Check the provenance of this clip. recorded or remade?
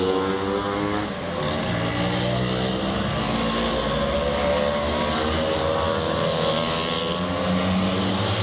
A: recorded